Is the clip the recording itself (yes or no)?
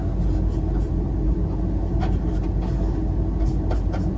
yes